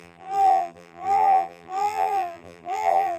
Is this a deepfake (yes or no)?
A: yes